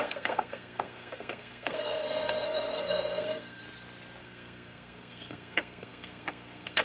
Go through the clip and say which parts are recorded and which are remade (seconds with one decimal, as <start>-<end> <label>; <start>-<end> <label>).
0.0-3.6 remade; 3.6-4.2 recorded; 4.2-6.8 remade